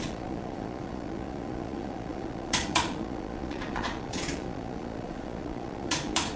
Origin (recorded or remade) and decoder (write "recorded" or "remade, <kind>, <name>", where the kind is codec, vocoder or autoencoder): remade, vocoder, Vocos